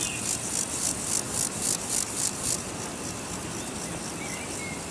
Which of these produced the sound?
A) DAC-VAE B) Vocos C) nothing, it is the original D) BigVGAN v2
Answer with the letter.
C